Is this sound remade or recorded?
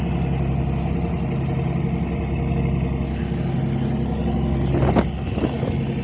recorded